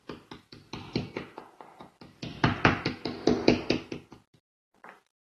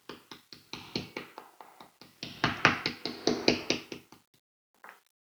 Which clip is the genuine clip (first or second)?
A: second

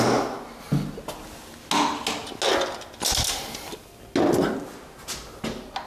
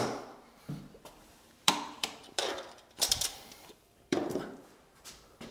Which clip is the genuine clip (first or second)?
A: first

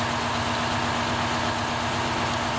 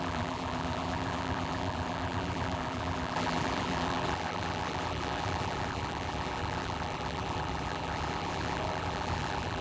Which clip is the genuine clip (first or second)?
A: first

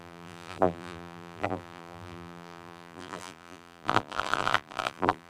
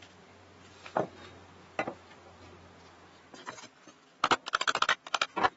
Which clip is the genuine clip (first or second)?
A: second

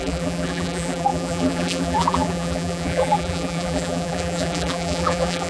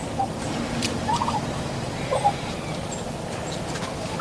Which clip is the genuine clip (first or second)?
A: second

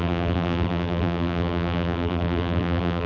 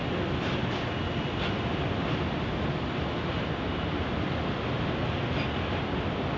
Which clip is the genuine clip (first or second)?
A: second